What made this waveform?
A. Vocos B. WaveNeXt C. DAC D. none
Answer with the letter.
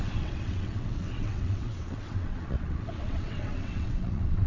B